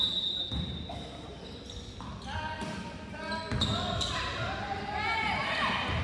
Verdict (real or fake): real